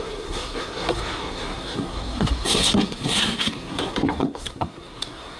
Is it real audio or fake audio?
fake